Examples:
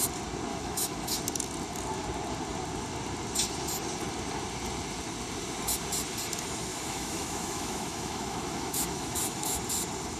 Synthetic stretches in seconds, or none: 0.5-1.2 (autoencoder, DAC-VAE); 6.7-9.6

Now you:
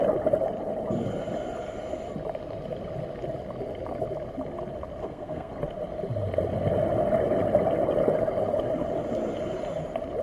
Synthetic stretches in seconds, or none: 5.0-5.5 (codec, SNAC)

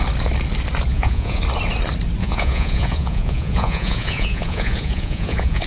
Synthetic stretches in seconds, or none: 0.9-1.4 (vocoder, Vocos); 2.2-5.7

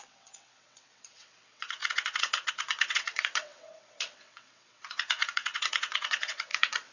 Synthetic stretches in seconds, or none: 0.0-6.9 (vocoder, WaveNeXt)